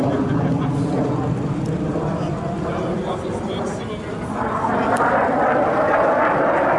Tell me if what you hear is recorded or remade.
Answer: recorded